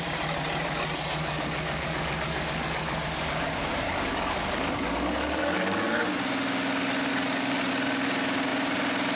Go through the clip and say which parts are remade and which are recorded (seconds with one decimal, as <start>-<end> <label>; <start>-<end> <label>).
0.0-1.2 recorded; 1.2-6.1 remade; 6.1-7.1 recorded; 7.1-7.7 remade; 7.7-9.2 recorded